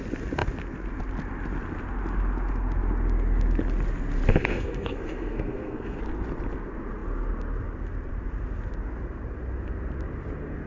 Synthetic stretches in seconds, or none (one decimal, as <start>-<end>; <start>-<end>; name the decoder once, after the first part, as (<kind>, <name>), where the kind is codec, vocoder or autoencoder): 4.3-6.0 (codec, SNAC)

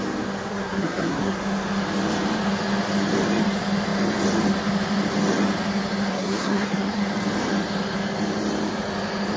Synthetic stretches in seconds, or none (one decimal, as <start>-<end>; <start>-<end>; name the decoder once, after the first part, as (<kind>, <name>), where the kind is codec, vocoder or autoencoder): 0.5-1.4 (codec, SNAC); 6.1-7.0

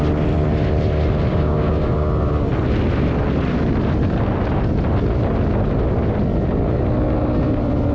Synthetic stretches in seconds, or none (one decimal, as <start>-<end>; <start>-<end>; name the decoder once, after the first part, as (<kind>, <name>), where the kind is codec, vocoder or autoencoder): 1.3-1.9 (codec, DAC)

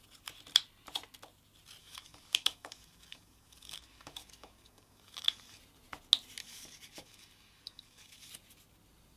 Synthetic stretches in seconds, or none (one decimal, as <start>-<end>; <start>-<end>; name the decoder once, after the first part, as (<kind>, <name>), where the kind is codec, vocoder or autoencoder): 1.8-5.6 (codec, DAC); 6.4-8.3

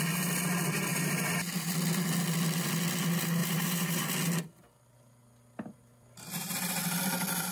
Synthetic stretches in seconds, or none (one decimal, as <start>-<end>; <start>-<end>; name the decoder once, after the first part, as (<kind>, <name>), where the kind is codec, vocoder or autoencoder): 0.9-1.5 (vocoder, BigVGAN v2); 3.4-4.0

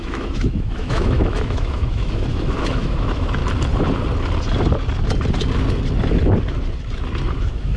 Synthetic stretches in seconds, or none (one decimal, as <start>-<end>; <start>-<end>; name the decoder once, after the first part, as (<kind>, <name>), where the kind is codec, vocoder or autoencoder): 0.0-3.4 (autoencoder, DAC-VAE); 7.3-7.8

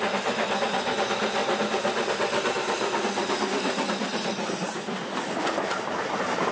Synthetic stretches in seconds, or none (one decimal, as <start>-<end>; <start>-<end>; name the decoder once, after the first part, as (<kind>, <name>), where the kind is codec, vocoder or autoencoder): none